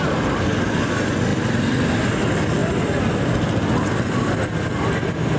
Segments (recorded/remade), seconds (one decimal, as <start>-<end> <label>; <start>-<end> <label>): 0.0-1.3 recorded; 1.3-1.9 remade; 1.9-2.6 recorded; 2.6-3.6 remade; 3.6-5.4 recorded